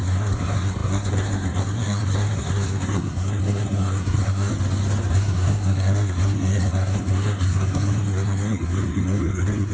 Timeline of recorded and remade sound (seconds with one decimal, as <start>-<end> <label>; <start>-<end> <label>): 0.0-4.5 remade; 4.5-5.1 recorded; 5.1-9.7 remade

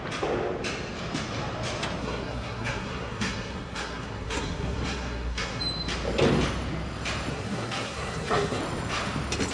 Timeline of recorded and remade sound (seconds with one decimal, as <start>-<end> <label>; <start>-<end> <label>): 0.0-2.0 recorded; 2.0-5.6 remade; 5.6-7.3 recorded; 7.3-8.6 remade; 8.6-9.5 recorded

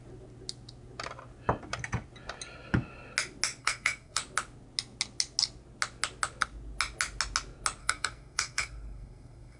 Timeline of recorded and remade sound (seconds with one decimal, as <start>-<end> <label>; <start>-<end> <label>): 0.0-3.6 recorded; 3.6-4.2 remade; 4.2-7.8 recorded; 7.8-9.6 remade

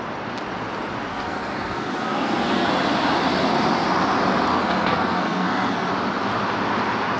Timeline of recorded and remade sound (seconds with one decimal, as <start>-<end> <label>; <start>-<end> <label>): 0.0-1.1 recorded; 1.1-2.7 remade; 2.7-4.5 recorded; 4.5-5.9 remade; 5.9-7.2 recorded

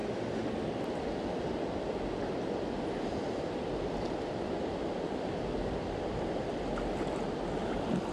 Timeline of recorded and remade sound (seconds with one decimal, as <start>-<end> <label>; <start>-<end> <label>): 0.0-8.1 recorded

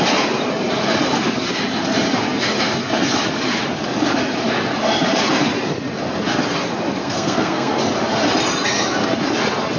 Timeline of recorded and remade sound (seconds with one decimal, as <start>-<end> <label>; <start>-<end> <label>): 0.0-7.0 recorded; 7.0-7.8 remade; 7.8-9.8 recorded

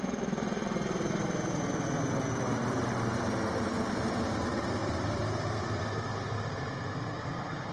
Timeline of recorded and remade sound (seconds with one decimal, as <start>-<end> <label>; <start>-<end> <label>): 0.0-7.7 recorded

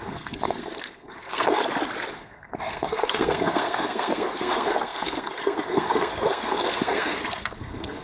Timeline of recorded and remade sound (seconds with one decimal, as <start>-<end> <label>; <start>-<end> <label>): 0.0-1.6 remade; 1.6-2.1 recorded; 2.1-8.0 remade